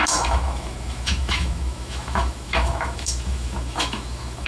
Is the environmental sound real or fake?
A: fake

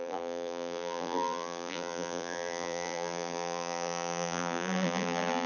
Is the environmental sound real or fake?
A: fake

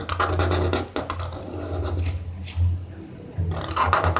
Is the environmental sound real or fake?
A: real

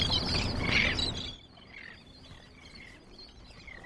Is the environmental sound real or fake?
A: real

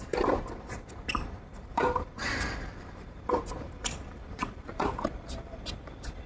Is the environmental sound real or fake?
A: fake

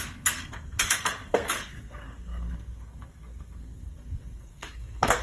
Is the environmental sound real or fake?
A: fake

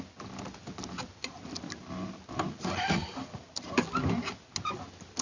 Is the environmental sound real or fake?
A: real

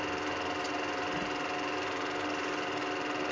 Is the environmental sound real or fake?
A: real